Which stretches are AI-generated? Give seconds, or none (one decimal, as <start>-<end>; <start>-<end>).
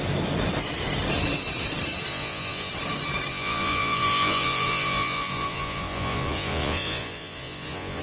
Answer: 2.1-2.7; 3.3-8.0